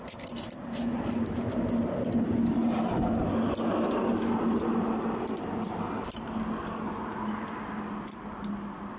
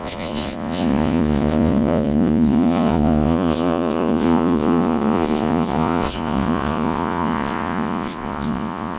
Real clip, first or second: first